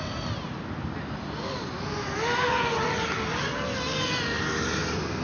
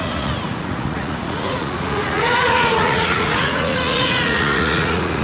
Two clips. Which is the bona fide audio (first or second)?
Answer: first